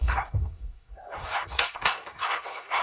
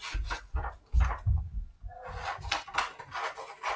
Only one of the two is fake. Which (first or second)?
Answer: first